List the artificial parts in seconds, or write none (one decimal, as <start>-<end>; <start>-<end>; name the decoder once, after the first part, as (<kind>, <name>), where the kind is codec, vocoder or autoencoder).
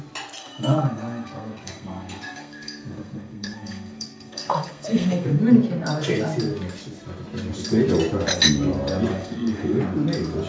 0.4-5.4 (codec, SNAC); 9.1-9.8